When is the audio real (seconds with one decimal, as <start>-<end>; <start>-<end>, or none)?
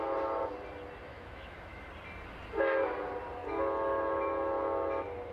0.0-1.1; 1.9-5.3